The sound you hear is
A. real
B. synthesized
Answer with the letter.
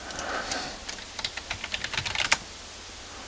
A